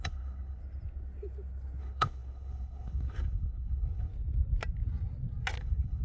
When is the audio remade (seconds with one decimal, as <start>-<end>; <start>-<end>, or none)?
0.0-0.6; 1.8-4.1; 5.6-6.0